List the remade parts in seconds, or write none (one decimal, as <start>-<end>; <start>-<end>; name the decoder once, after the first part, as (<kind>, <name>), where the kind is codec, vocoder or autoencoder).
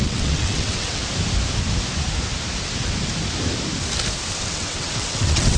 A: 0.0-1.0 (vocoder, WaveNeXt); 4.4-5.6